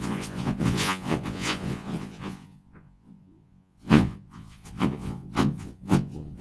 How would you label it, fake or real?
fake